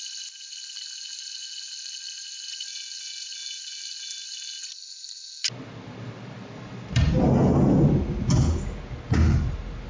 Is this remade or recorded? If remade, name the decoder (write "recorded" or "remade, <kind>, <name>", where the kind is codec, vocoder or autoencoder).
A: recorded